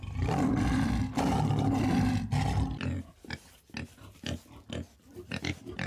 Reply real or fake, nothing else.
real